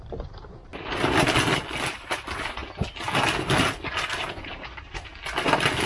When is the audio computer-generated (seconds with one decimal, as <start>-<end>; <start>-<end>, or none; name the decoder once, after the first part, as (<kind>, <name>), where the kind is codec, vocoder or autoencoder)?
0.0-0.7 (vocoder, BigVGAN v2); 2.1-2.6; 4.1-5.1